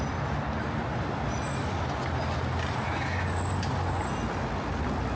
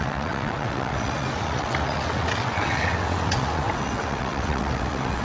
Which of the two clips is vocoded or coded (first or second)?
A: second